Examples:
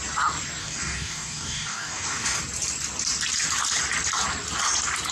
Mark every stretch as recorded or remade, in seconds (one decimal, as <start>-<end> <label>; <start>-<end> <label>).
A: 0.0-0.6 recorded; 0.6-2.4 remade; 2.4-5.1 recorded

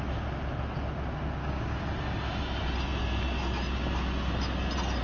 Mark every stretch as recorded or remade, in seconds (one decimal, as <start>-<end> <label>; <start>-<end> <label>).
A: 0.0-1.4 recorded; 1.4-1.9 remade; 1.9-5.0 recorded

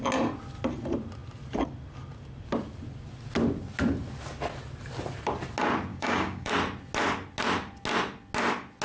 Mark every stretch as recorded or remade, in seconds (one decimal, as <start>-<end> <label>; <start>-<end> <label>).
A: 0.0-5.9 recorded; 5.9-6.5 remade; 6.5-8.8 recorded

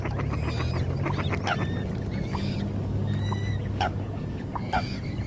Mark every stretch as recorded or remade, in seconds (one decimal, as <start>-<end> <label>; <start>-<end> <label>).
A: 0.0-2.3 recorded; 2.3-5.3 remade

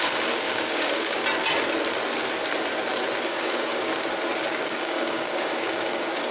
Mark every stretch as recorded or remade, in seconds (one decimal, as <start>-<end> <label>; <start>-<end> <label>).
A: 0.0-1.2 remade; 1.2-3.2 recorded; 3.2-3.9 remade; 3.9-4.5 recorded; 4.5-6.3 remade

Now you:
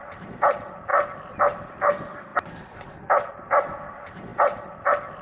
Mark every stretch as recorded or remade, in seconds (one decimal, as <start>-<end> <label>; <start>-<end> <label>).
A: 0.0-5.2 recorded

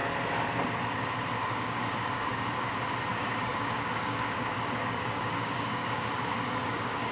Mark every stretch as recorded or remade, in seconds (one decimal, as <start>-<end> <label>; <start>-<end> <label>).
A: 0.0-1.4 recorded; 1.4-2.7 remade; 2.7-3.1 recorded; 3.1-7.1 remade

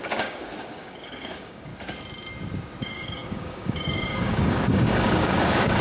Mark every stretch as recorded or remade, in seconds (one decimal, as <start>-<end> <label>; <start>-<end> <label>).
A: 0.0-1.7 remade; 1.7-2.8 recorded; 2.8-5.8 remade